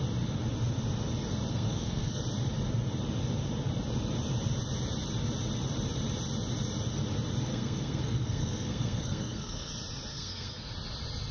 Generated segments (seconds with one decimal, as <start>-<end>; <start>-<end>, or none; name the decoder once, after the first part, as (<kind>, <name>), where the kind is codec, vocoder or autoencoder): 1.5-2.2 (codec, SNAC); 7.5-9.7; 10.1-10.7